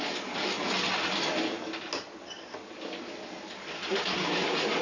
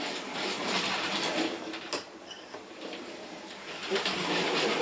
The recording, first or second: first